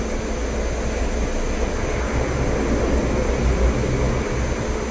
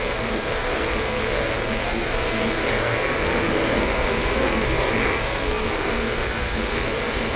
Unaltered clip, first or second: first